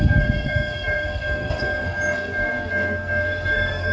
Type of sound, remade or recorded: remade